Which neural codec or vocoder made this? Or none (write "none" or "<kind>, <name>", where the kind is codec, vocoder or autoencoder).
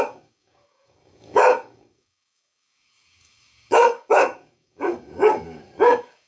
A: codec, DAC